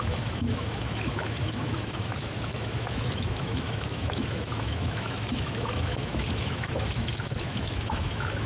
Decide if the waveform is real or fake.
fake